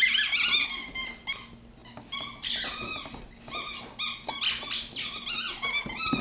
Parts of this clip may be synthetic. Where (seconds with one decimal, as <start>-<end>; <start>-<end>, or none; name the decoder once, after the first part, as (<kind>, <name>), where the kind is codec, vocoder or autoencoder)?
none